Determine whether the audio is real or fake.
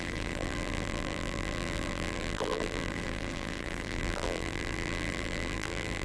fake